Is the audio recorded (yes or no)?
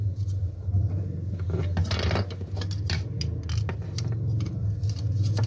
yes